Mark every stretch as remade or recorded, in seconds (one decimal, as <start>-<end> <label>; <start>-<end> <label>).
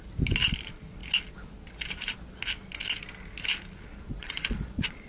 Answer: 0.0-3.9 recorded; 3.9-5.1 remade